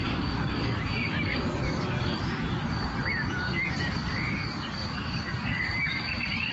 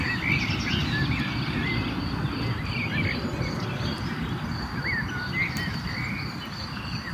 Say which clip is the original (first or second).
second